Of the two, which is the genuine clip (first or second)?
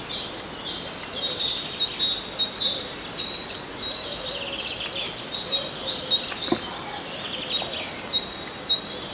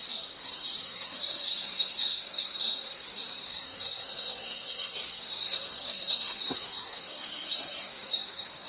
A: first